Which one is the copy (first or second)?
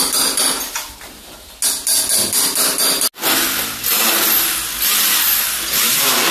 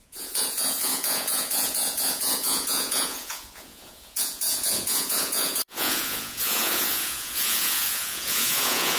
second